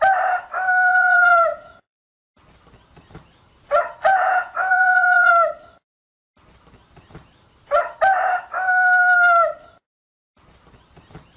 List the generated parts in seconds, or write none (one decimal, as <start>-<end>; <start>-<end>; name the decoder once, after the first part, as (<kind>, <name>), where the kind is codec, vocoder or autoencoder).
0.9-2.2 (vocoder, Vocos); 4.0-5.3